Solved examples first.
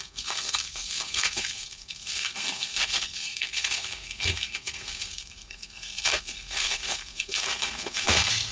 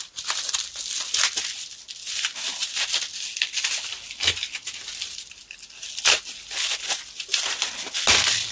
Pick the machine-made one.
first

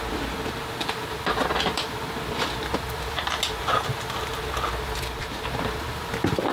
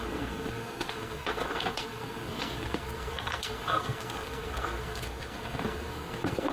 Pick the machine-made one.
second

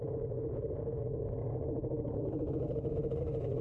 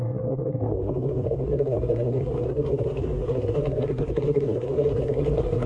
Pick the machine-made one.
second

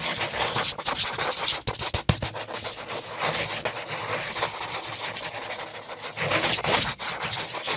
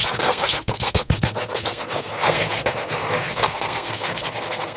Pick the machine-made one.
second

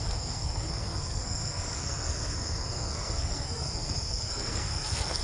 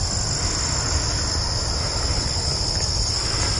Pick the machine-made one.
first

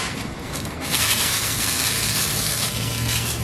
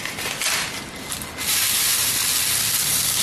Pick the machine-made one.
first